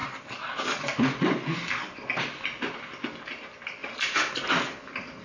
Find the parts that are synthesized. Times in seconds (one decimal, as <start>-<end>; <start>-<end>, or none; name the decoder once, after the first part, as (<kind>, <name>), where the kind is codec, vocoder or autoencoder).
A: 0.0-2.2 (vocoder, BigVGAN v2)